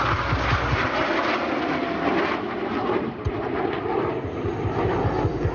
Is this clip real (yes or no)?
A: yes